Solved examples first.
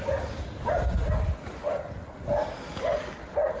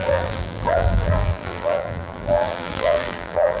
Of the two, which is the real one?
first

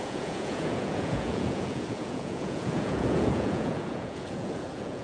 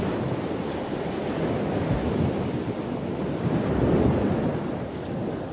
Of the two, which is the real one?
second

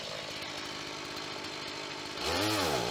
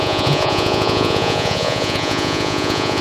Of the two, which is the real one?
first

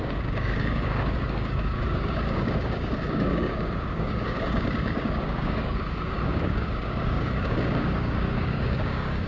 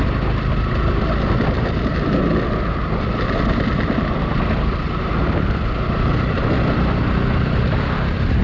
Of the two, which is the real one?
second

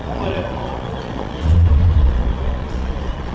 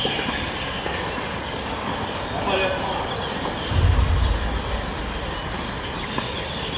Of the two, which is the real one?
second